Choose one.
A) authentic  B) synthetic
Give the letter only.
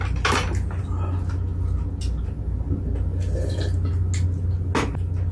A